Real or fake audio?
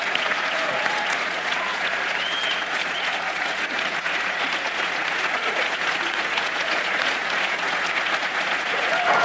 fake